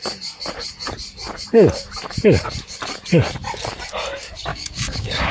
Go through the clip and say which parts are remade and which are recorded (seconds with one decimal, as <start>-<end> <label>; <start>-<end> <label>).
0.0-4.5 recorded; 4.5-5.3 remade